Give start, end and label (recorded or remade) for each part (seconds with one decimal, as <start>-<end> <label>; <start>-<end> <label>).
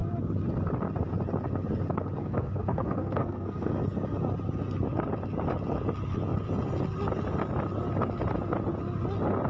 0.0-2.2 recorded; 2.2-3.7 remade; 3.7-9.5 recorded